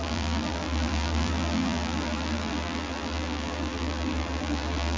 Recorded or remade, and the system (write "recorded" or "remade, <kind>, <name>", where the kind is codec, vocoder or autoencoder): remade, vocoder, BigVGAN v2